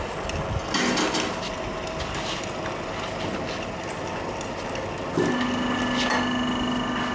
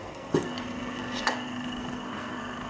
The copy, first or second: second